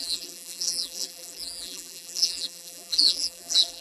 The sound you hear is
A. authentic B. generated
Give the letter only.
B